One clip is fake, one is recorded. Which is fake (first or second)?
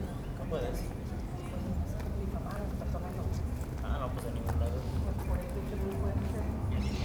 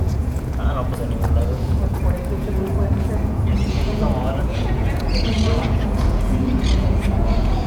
second